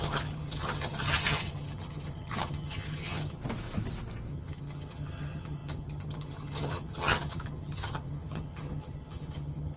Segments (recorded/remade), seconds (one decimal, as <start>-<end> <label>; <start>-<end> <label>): 0.0-3.4 remade; 3.4-4.3 recorded; 4.3-9.8 remade

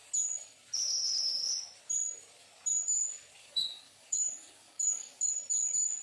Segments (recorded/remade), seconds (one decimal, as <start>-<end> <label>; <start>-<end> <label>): 0.0-3.4 recorded; 3.4-5.3 remade; 5.3-6.0 recorded

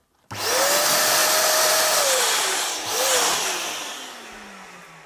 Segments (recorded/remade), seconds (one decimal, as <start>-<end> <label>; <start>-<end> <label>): 0.0-1.2 recorded; 1.2-3.0 remade; 3.0-5.1 recorded

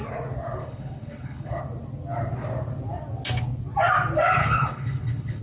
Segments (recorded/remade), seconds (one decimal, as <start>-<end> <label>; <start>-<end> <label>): 0.0-0.6 recorded; 0.6-1.6 remade; 1.6-4.4 recorded; 4.4-5.4 remade